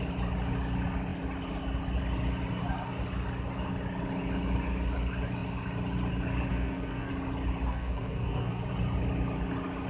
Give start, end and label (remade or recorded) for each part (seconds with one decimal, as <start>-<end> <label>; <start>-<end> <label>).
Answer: 0.0-6.5 recorded; 6.5-7.1 remade; 7.1-7.7 recorded; 7.7-8.6 remade; 8.6-9.9 recorded